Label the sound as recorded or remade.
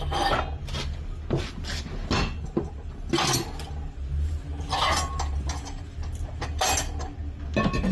recorded